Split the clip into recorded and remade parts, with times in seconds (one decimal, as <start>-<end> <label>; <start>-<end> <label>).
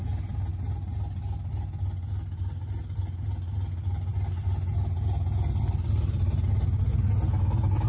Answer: 0.0-7.9 recorded